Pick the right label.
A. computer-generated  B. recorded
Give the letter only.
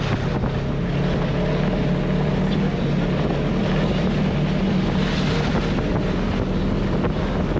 B